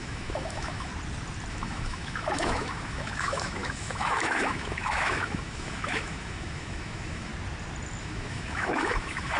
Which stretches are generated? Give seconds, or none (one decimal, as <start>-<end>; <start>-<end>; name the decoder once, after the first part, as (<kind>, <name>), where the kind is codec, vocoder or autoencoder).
0.0-0.9 (autoencoder, DAC-VAE); 1.5-7.3; 8.0-9.4